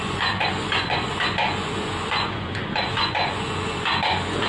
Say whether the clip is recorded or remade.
remade